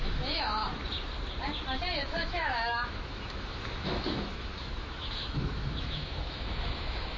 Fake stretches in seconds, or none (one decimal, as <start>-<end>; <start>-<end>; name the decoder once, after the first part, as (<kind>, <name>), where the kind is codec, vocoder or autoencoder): 0.0-0.6 (autoencoder, DAC-VAE); 2.1-7.2